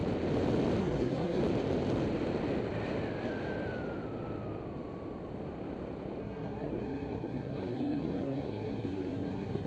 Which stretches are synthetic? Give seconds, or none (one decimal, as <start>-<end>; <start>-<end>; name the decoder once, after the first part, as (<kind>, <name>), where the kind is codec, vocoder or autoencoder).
0.8-1.4 (codec, SNAC); 6.2-9.7